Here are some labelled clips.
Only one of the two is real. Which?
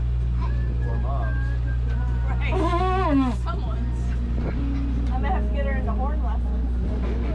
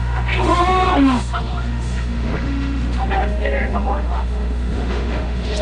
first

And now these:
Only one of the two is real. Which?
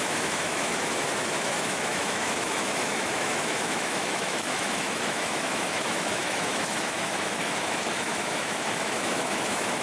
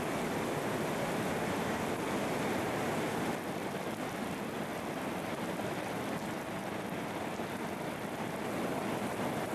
second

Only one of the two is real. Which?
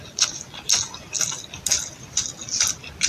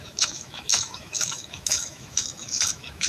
first